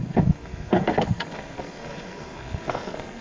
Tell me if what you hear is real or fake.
fake